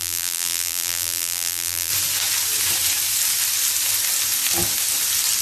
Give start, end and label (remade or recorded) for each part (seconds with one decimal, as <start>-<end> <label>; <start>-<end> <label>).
0.0-1.9 remade; 1.9-5.4 recorded